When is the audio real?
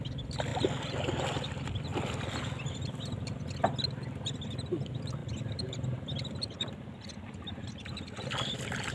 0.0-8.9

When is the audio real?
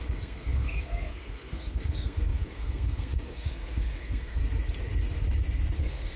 4.4-5.8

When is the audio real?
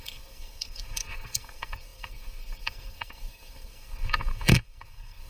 none